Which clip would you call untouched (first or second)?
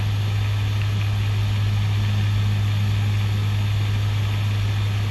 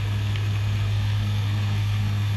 first